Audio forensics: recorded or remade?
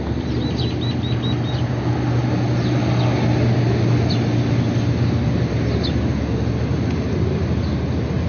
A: recorded